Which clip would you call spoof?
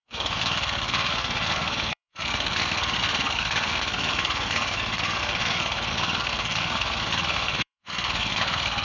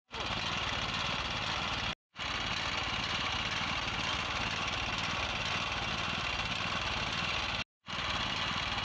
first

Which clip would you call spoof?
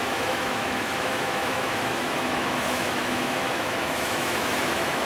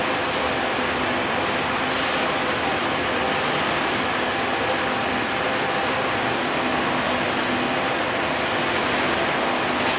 first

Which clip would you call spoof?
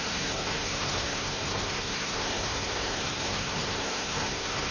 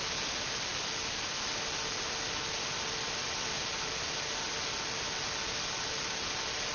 first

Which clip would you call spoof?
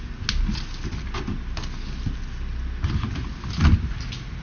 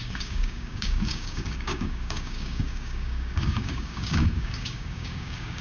second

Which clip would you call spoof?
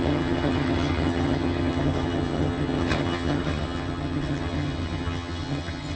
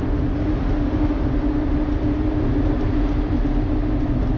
first